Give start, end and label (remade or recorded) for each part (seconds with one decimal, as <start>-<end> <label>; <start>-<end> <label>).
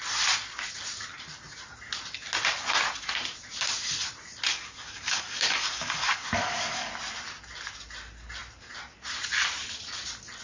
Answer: 0.0-4.5 recorded; 4.5-6.9 remade; 6.9-10.4 recorded